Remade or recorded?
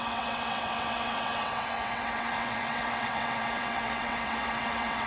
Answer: remade